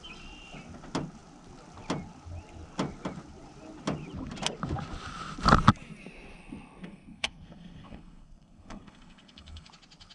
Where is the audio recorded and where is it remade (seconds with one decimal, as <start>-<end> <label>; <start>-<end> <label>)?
0.0-6.8 recorded; 6.8-9.7 remade; 9.7-10.1 recorded